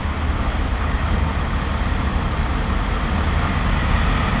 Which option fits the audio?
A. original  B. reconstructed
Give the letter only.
A